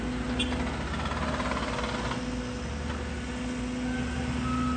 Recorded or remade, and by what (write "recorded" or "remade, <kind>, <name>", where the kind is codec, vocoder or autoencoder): recorded